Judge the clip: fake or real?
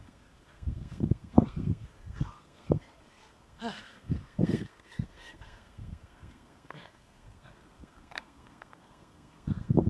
fake